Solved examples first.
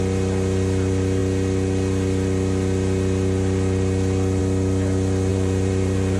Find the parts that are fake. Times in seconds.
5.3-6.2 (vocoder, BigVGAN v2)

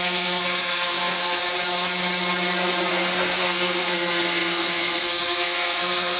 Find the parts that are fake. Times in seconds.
0.0-1.4 (codec, SNAC); 2.9-6.2

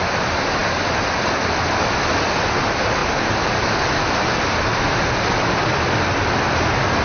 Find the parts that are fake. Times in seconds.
none

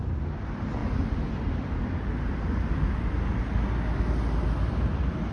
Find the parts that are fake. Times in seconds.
none

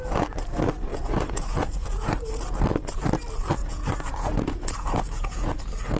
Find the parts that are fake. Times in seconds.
0.9-2.1 (vocoder, Vocos); 3.6-5.6

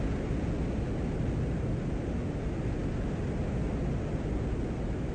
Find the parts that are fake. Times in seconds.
none

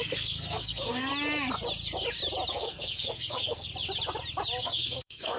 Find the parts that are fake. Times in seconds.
0.0-1.1 (codec, SNAC); 2.5-3.7; 4.6-5.4